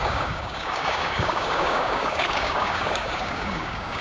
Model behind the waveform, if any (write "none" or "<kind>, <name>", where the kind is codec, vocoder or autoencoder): codec, DAC